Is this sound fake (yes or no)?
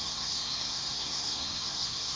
yes